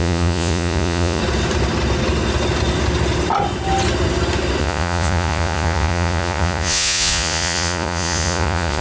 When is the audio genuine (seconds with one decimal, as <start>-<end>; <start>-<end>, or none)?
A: 1.2-4.6

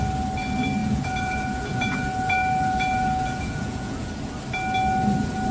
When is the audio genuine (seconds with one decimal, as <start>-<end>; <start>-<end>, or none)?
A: 0.0-0.8; 4.1-5.5

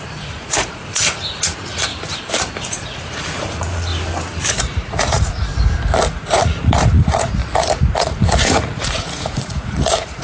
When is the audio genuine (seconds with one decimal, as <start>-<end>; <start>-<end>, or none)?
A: 1.9-3.0; 3.9-4.5; 5.5-6.4; 7.4-8.0

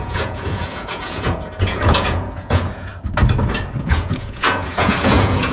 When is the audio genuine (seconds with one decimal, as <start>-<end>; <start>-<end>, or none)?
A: 2.9-3.8

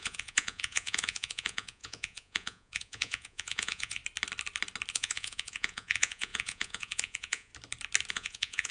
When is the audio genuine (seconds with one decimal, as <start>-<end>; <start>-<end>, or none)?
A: 4.0-4.9; 7.5-8.1